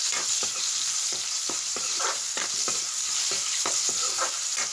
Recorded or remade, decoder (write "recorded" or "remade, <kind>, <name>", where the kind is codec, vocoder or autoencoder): remade, vocoder, BigVGAN v2